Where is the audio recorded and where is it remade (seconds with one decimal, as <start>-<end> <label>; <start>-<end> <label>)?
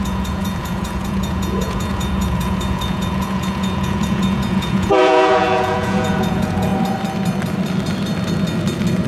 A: 0.0-6.7 remade; 6.7-9.1 recorded